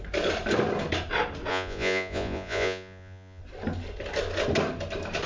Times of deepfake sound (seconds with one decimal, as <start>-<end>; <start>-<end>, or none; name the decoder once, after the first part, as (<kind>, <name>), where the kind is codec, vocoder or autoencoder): 1.5-3.4 (vocoder, Vocos)